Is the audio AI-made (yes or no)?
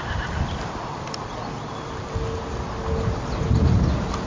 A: no